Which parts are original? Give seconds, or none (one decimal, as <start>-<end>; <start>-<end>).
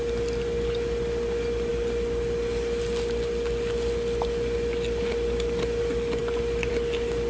0.0-7.3